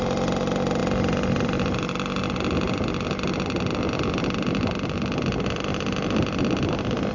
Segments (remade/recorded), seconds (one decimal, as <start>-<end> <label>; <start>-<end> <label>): 0.0-7.1 recorded